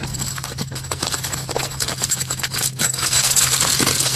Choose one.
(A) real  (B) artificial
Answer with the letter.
B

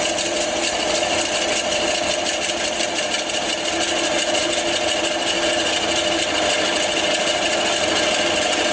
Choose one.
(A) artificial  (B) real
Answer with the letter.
B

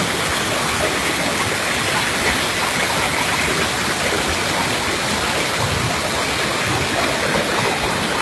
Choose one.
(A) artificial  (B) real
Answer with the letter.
B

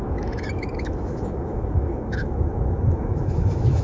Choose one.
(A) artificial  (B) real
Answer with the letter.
A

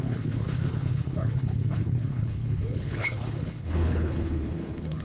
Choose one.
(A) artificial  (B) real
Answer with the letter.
A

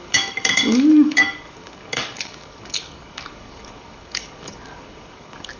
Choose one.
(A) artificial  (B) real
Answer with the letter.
A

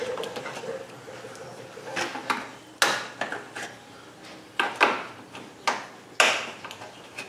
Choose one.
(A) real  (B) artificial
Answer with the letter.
A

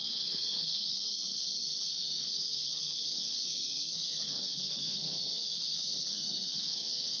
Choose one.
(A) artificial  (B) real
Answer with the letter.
A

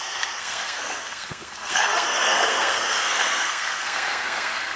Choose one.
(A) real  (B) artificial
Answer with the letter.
B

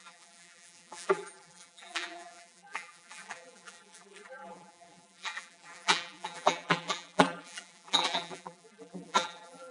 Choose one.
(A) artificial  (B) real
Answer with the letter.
A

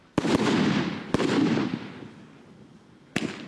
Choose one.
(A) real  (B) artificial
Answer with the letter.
A